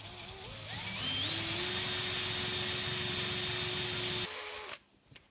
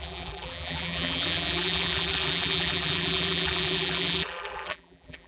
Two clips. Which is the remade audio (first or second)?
second